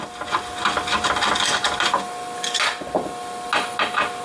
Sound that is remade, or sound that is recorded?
recorded